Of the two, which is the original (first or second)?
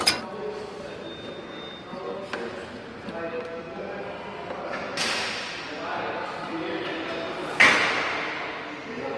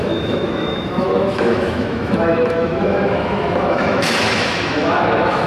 first